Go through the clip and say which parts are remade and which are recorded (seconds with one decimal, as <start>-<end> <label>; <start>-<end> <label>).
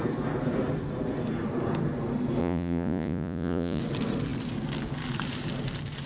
0.0-2.4 recorded; 2.4-3.8 remade; 3.8-6.1 recorded